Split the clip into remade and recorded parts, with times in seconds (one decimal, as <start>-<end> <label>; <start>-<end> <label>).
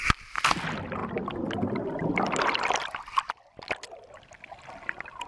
0.0-5.3 recorded